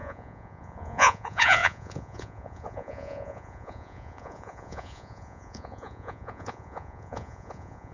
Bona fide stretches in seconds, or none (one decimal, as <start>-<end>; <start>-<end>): none